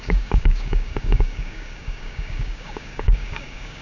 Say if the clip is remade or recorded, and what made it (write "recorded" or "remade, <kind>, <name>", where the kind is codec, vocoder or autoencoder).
remade, codec, DAC